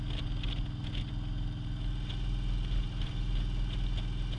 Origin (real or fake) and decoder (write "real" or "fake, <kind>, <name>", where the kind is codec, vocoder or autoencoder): real